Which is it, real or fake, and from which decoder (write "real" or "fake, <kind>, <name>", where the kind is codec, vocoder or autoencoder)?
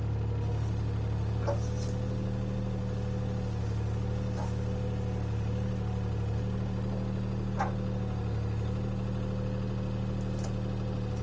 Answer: real